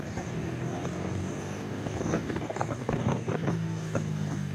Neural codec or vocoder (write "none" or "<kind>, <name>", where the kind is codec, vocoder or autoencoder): codec, DAC